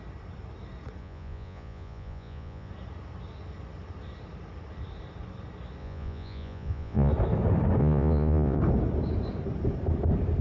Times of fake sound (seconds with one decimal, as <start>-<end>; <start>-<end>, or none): 1.0-2.7; 5.8-7.1; 7.8-8.6